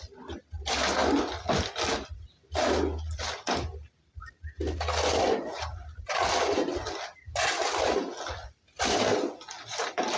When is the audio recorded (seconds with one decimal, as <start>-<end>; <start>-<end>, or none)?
0.0-5.5; 7.5-9.7